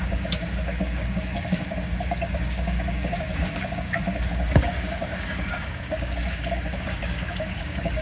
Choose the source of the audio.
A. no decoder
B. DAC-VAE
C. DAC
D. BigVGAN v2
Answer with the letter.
C